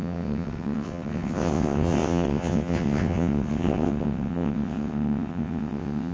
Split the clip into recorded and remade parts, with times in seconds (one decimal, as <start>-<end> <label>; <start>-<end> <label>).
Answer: 0.0-6.1 remade